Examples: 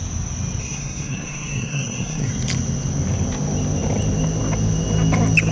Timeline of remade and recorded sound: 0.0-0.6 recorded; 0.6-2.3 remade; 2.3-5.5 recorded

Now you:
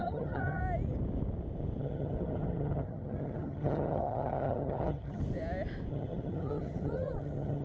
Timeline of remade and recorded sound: 0.0-0.6 remade; 0.6-1.8 recorded; 1.8-5.2 remade; 5.2-5.9 recorded; 5.9-7.6 remade